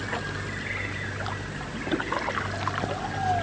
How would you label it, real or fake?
real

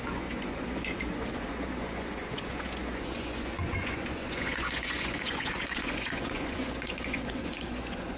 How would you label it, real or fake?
fake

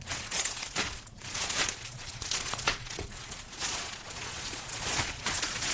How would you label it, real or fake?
fake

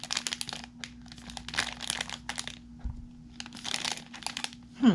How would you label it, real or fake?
real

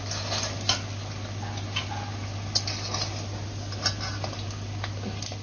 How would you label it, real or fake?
real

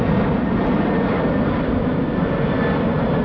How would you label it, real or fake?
real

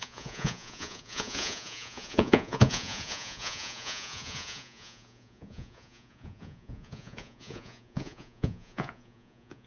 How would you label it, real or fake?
fake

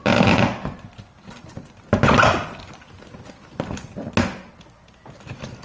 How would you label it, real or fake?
real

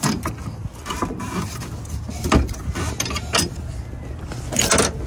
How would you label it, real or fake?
real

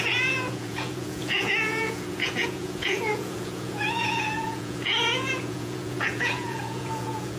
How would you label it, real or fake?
fake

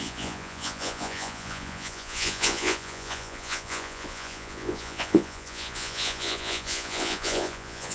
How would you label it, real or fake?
fake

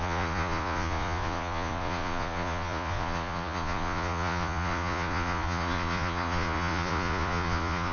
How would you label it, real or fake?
fake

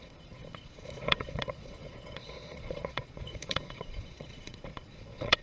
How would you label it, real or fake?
fake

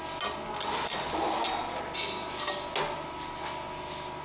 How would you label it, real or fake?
real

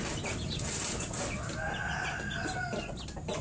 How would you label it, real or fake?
real